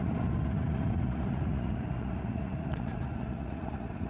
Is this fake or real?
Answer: fake